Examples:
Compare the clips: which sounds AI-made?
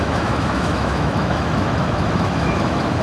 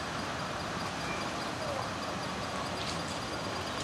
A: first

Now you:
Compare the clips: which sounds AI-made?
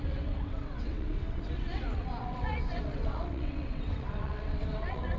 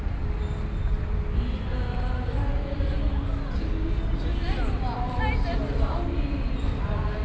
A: first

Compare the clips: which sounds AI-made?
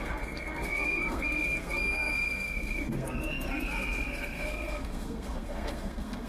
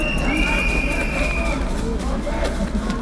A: first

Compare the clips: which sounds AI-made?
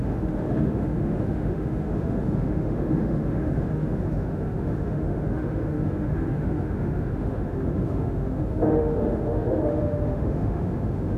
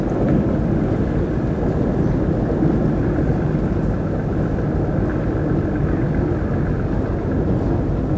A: first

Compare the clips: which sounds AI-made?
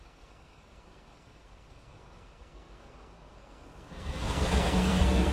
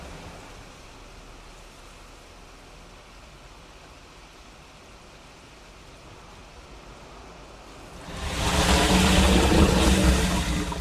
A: first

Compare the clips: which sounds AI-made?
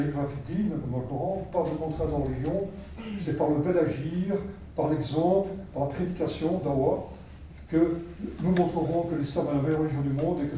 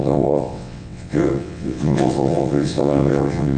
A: second